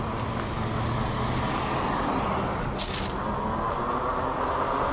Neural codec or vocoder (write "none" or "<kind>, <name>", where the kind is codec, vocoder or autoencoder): none